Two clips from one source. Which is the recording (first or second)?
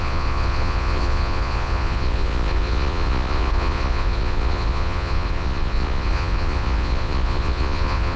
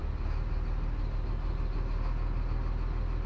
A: second